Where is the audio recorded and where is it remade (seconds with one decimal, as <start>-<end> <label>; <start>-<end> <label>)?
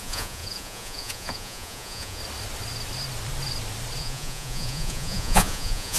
0.0-2.2 remade; 2.2-4.0 recorded; 4.0-6.0 remade